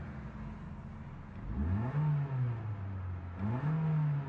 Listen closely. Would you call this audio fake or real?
real